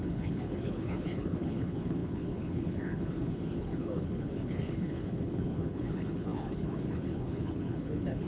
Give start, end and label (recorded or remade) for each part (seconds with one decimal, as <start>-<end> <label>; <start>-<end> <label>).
0.0-8.3 remade